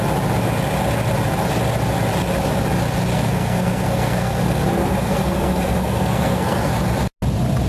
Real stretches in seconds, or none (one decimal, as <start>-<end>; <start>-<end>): 0.0-3.1; 6.7-7.7